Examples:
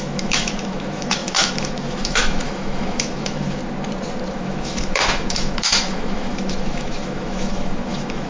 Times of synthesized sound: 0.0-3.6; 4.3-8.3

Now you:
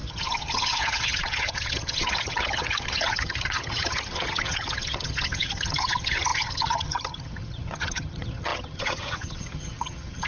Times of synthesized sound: 0.0-10.3

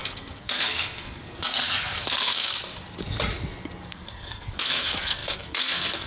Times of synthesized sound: 0.0-2.5; 3.8-6.1